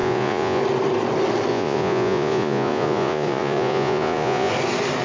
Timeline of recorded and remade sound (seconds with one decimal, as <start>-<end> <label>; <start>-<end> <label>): 0.0-0.6 remade; 0.6-1.5 recorded; 1.5-4.5 remade; 4.5-5.0 recorded